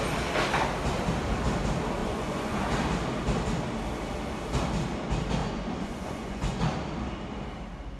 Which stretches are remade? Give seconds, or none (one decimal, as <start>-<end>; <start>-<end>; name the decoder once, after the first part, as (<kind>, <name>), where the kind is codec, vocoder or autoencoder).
2.0-2.6 (vocoder, Vocos); 5.4-6.6